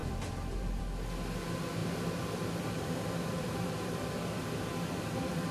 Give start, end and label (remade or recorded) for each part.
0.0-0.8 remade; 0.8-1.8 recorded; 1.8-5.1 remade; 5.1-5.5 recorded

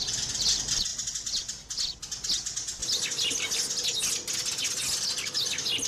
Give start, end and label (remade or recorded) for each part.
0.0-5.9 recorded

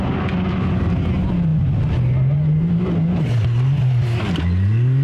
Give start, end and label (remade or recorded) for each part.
0.0-5.0 recorded

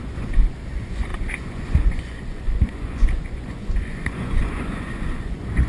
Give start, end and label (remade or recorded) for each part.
0.0-5.7 remade